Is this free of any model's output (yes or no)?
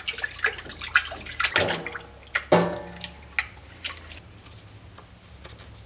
yes